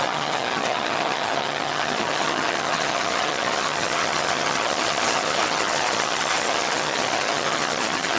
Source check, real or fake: fake